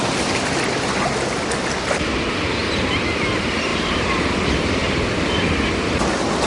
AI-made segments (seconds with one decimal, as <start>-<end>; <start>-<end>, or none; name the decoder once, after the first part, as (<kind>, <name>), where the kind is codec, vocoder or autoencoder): 3.7-4.3 (vocoder, BigVGAN v2)